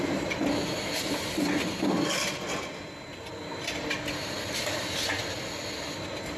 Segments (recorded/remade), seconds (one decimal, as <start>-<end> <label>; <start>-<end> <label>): 0.0-6.4 recorded